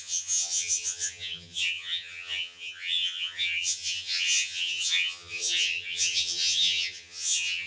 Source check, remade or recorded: remade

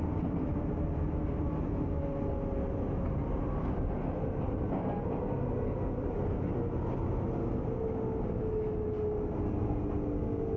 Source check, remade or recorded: recorded